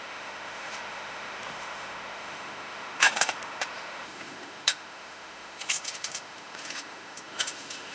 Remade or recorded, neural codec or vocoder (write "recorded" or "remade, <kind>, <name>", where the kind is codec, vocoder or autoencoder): remade, autoencoder, DAC-VAE